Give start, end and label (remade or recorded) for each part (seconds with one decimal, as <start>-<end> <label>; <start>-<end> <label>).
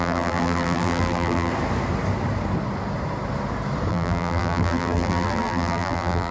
0.0-1.5 remade; 1.5-3.9 recorded; 3.9-6.3 remade